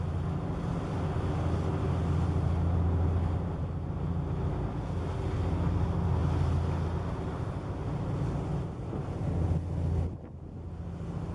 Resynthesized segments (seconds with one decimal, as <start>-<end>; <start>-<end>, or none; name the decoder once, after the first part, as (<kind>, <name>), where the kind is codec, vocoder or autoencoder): none